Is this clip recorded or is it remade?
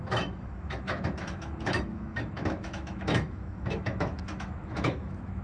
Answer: remade